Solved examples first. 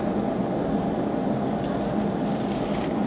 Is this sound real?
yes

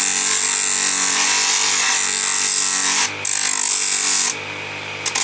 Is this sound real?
yes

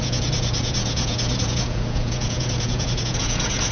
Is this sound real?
no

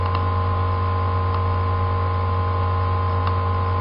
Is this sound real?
yes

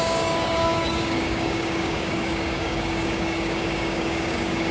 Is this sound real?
no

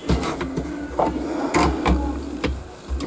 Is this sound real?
yes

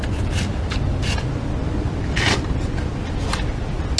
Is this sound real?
yes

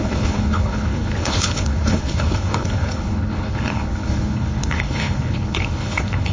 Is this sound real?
no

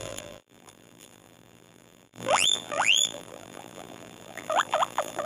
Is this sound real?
no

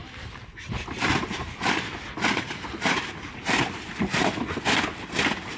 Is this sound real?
yes